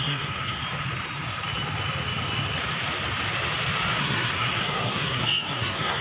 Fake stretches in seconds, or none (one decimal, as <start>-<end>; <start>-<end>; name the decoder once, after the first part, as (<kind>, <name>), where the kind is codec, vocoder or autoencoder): 0.0-0.6 (codec, SNAC); 4.0-6.0